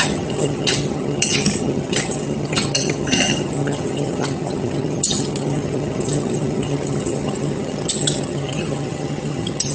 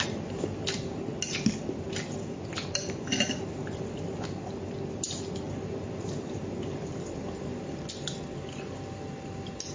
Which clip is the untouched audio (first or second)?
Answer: second